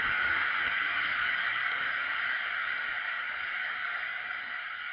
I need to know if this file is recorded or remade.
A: remade